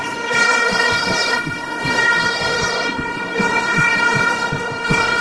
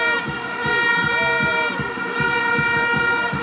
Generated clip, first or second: first